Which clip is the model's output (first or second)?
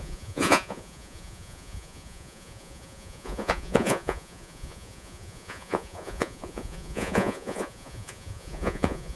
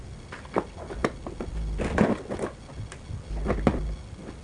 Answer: first